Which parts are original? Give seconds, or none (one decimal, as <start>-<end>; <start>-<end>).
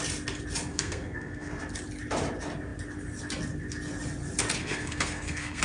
0.0-0.7; 1.6-4.6